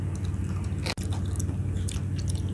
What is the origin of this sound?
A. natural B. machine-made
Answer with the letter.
A